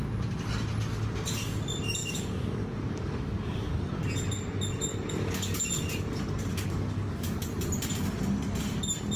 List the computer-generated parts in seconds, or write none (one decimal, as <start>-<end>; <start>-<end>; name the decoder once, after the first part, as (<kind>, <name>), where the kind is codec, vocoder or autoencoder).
2.0-4.0 (codec, DAC); 4.9-5.7; 6.5-7.5